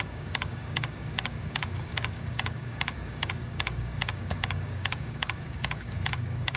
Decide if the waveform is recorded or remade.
remade